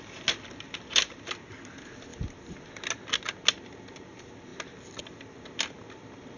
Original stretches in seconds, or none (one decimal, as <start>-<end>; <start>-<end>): 0.0-6.4